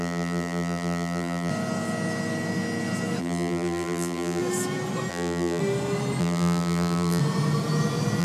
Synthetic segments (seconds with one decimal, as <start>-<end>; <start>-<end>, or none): 0.0-1.5; 3.2-4.4; 5.1-5.6; 6.2-7.2